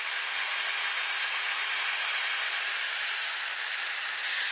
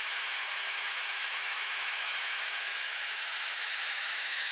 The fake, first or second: second